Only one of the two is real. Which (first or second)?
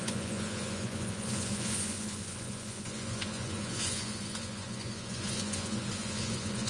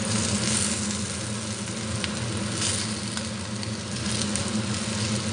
second